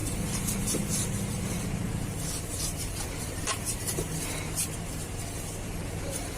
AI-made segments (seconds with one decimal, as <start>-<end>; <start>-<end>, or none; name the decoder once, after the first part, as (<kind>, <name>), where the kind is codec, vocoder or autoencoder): 0.0-6.4 (vocoder, BigVGAN v2)